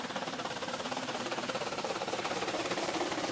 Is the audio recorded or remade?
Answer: remade